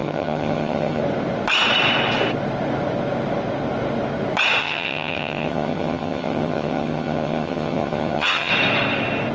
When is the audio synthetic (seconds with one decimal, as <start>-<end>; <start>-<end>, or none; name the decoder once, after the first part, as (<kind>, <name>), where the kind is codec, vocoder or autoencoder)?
0.0-1.0 (vocoder, HiFi-GAN); 4.6-8.5